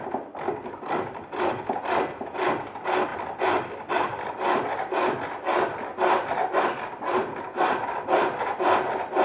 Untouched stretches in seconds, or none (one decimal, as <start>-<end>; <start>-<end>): 0.0-9.2